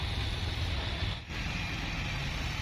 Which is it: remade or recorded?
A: recorded